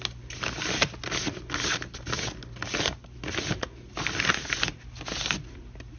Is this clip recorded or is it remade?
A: recorded